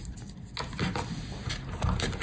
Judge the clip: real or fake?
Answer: real